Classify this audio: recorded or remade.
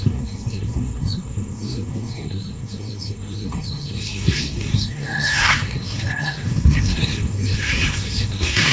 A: remade